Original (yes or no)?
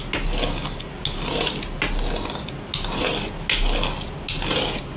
yes